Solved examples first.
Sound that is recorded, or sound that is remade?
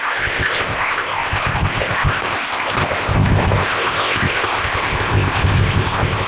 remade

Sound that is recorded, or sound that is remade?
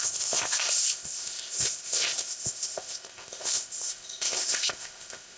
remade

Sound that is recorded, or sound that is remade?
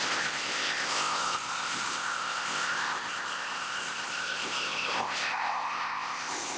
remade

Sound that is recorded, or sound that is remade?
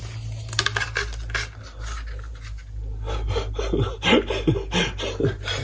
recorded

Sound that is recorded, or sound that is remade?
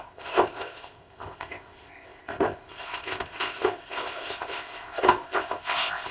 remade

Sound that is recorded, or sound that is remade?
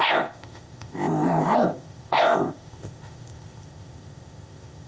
remade